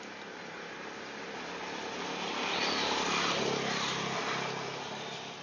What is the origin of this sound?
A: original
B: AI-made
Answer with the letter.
A